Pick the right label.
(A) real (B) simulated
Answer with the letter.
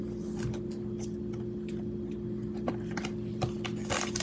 A